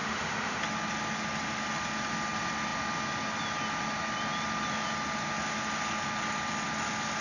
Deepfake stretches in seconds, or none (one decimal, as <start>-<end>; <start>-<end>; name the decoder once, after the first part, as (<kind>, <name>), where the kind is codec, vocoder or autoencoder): 0.0-0.6 (autoencoder, DAC-VAE)